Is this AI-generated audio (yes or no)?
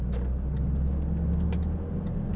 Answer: no